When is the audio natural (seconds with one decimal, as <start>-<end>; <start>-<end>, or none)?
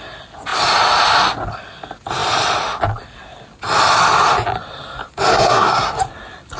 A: 0.0-5.3; 5.9-6.6